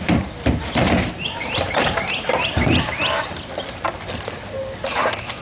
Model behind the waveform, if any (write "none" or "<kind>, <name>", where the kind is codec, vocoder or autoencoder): vocoder, BigVGAN v2